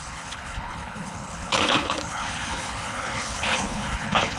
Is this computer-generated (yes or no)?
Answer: yes